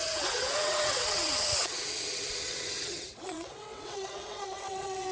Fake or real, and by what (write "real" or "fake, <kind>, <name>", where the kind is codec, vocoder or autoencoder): fake, vocoder, WaveNeXt